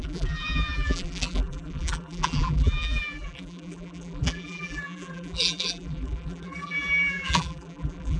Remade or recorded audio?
remade